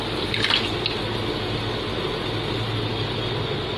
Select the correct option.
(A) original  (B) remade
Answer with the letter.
A